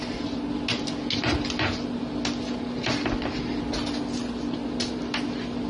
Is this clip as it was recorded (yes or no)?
yes